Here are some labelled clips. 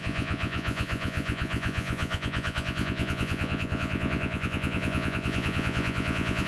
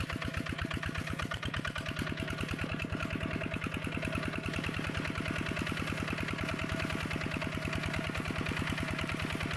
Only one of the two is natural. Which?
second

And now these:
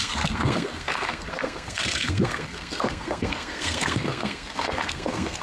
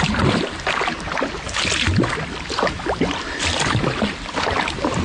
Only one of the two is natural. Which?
second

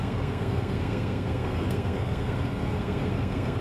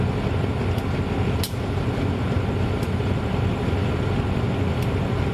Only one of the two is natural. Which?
second